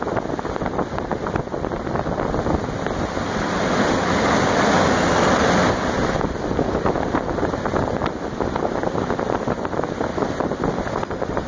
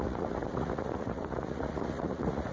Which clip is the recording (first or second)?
first